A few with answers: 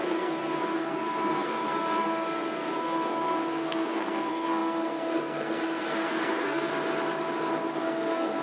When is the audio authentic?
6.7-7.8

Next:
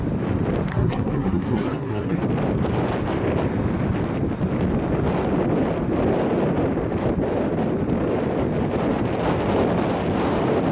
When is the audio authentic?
0.0-0.7; 2.2-10.7